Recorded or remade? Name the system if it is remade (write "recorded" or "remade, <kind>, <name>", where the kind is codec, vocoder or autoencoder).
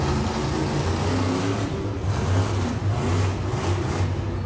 recorded